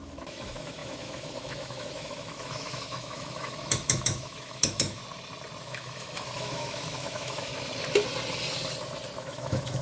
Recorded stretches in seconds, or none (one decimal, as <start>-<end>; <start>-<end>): 5.0-5.6; 7.5-9.2